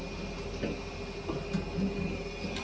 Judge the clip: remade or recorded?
recorded